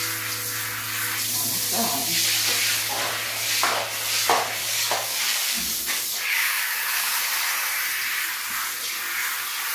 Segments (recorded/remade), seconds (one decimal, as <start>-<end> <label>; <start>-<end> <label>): 0.0-4.6 recorded; 4.6-7.2 remade; 7.2-9.7 recorded